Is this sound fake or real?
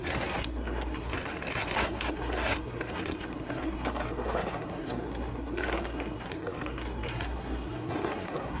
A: fake